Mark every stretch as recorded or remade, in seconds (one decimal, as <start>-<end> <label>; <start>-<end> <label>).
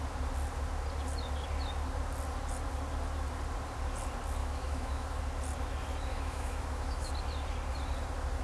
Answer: 0.0-4.4 recorded; 4.4-5.2 remade; 5.2-6.1 recorded; 6.1-7.1 remade; 7.1-8.4 recorded